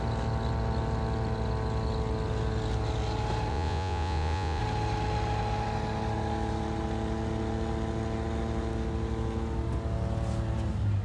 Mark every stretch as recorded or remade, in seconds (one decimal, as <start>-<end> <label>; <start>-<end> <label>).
0.0-3.5 recorded; 3.5-4.6 remade; 4.6-11.0 recorded